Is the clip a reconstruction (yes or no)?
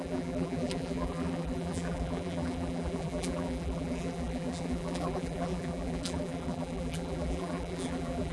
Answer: yes